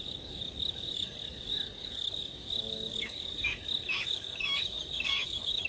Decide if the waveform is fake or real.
fake